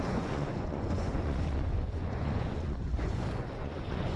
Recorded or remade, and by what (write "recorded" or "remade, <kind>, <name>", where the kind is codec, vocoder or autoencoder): remade, vocoder, Vocos